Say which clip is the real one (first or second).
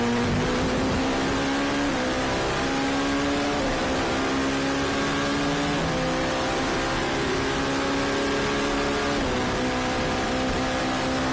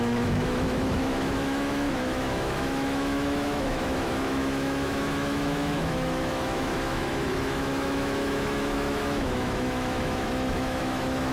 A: first